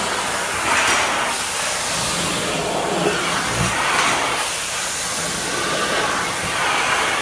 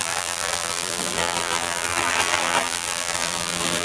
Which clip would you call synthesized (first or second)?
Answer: second